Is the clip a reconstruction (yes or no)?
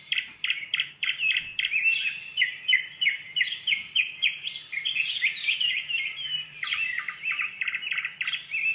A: yes